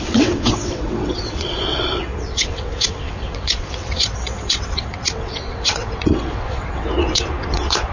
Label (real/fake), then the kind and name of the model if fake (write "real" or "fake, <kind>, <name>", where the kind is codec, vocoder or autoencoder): fake, vocoder, WaveNeXt